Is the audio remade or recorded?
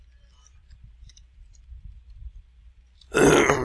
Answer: remade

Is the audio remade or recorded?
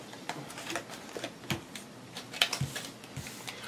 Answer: recorded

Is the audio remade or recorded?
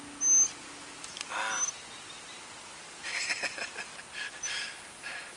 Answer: recorded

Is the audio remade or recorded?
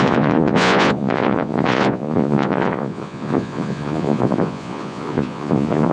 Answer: remade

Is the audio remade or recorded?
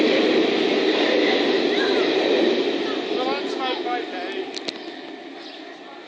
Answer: recorded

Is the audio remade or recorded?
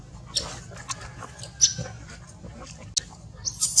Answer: recorded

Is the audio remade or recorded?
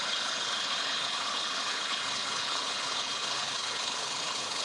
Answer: remade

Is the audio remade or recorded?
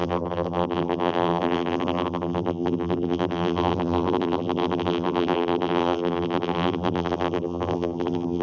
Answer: remade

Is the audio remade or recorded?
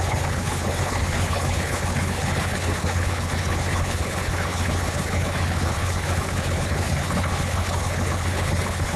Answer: remade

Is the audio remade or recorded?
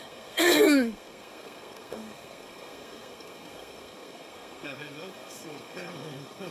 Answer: remade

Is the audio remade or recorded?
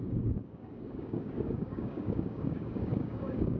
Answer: remade